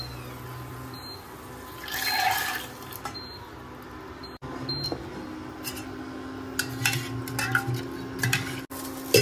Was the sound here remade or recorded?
recorded